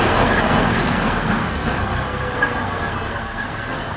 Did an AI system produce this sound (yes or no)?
yes